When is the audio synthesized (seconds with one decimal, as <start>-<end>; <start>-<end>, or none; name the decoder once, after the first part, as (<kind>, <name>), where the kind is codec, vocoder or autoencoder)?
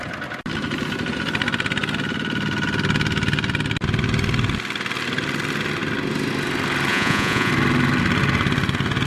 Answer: 6.9-7.5 (vocoder, Vocos)